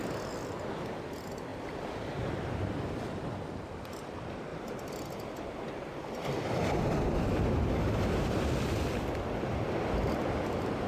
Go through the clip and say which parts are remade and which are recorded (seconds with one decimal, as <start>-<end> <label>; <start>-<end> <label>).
0.0-1.5 recorded; 1.5-2.4 remade; 2.4-4.5 recorded; 4.5-5.1 remade; 5.1-10.9 recorded